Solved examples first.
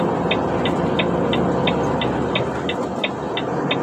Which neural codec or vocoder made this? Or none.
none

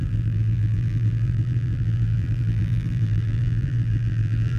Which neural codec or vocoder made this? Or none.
vocoder, BigVGAN v2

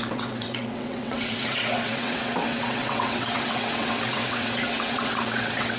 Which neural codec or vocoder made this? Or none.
vocoder, WaveNeXt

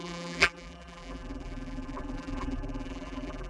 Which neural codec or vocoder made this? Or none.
vocoder, BigVGAN v2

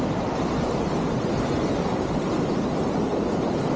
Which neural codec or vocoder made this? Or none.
none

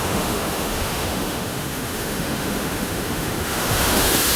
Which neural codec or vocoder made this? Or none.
autoencoder, DAC-VAE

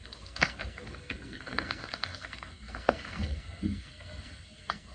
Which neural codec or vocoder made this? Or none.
codec, SNAC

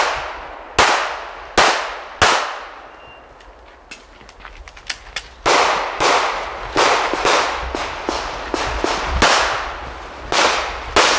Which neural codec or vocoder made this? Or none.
none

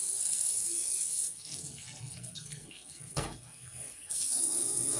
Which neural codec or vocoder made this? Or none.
codec, SNAC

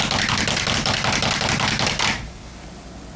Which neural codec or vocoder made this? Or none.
none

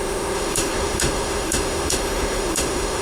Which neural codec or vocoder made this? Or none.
autoencoder, DAC-VAE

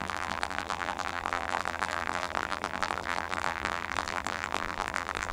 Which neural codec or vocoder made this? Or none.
vocoder, BigVGAN v2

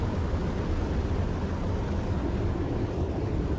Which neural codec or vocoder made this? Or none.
none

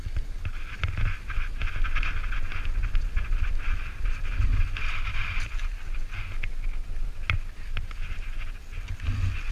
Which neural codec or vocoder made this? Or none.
none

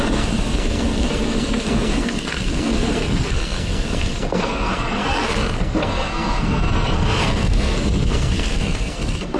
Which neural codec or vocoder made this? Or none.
codec, SNAC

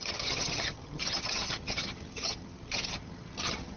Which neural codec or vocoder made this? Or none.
vocoder, HiFi-GAN